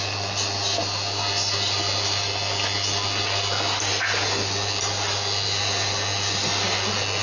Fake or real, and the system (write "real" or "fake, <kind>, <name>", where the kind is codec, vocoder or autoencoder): real